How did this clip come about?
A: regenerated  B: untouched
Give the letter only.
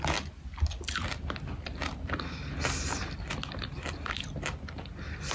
B